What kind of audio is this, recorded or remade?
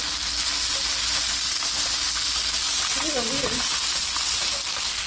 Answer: recorded